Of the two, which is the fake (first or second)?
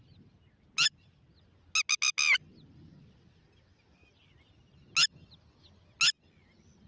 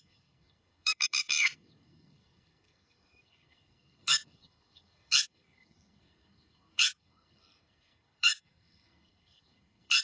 second